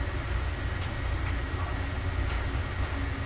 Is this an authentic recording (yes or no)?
yes